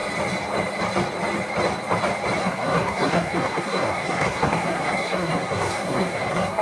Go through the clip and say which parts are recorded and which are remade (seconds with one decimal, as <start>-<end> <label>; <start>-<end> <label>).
0.0-2.4 recorded; 2.4-6.6 remade